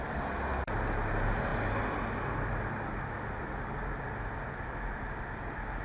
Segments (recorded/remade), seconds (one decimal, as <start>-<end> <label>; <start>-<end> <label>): 0.0-5.8 recorded